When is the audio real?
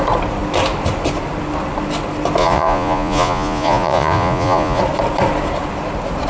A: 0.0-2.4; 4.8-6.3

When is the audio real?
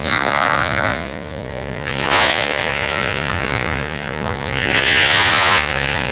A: none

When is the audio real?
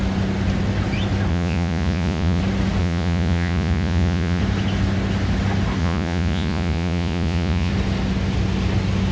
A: 0.0-1.3; 2.4-2.8; 4.4-5.8; 7.7-9.1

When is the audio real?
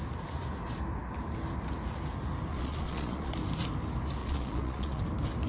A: 0.0-2.5; 3.3-4.2; 5.0-5.5